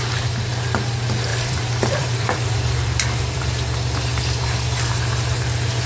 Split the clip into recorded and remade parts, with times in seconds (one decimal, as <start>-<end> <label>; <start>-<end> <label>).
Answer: 0.0-1.3 recorded; 1.3-3.4 remade; 3.4-5.9 recorded

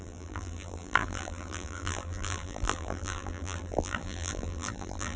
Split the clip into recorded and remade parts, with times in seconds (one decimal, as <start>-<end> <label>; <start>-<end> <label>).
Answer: 0.0-5.2 remade

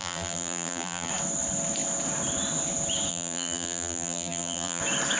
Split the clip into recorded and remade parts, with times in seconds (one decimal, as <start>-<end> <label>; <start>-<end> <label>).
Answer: 0.0-1.1 remade; 1.1-3.1 recorded; 3.1-4.8 remade; 4.8-5.2 recorded